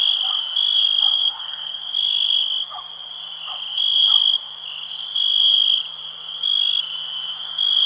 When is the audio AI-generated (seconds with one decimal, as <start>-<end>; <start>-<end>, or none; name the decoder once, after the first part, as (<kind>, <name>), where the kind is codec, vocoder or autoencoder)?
1.1-1.8 (codec, SNAC)